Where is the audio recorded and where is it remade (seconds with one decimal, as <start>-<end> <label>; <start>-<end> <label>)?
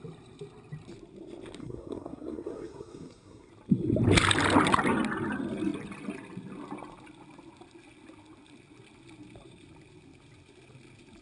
0.0-1.6 recorded; 1.6-3.5 remade; 3.5-11.2 recorded